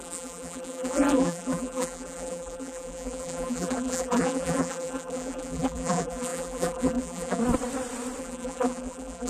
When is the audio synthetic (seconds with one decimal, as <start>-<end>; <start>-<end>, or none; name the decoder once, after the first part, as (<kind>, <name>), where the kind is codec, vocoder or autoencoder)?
0.0-7.4 (vocoder, BigVGAN v2); 8.2-9.3